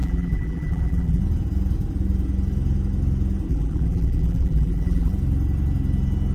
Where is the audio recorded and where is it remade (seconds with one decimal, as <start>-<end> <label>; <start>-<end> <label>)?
0.0-1.2 remade; 1.2-3.5 recorded; 3.5-5.1 remade; 5.1-6.3 recorded